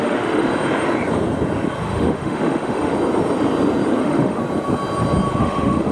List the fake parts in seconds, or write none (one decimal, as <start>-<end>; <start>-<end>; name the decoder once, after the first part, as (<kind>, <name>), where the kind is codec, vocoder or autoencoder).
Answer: 0.0-0.5 (autoencoder, DAC-VAE); 1.8-2.9; 4.0-4.4; 5.4-5.9